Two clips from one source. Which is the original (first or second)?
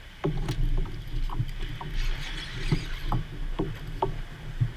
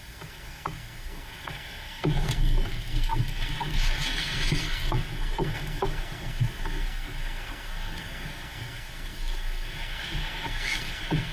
first